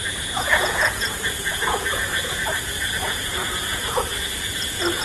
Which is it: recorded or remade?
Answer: remade